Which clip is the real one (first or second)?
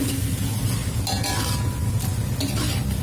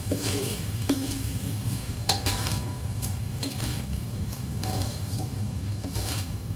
first